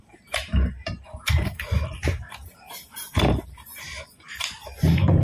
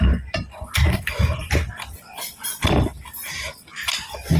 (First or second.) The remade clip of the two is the first